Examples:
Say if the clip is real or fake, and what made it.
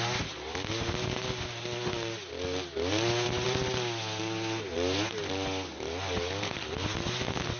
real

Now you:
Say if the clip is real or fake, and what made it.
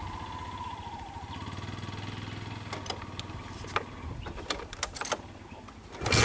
real